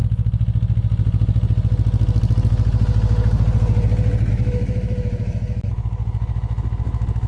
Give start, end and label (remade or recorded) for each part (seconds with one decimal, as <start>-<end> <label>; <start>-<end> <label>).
0.0-4.3 recorded; 4.3-7.3 remade